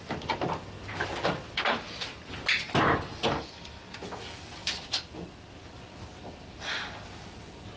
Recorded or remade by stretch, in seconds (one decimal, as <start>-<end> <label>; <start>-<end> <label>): 0.0-7.8 recorded